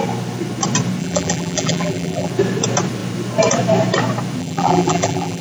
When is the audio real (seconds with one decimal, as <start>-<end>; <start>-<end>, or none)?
0.0-1.0; 2.3-4.4